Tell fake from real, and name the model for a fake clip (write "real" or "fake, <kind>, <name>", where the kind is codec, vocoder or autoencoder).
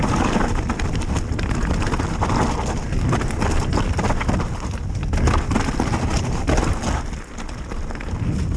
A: real